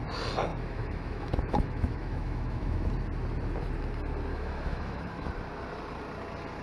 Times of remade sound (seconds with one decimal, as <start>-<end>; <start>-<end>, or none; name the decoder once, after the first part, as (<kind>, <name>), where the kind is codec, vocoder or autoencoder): 0.5-2.9 (autoencoder, DAC-VAE); 4.3-5.3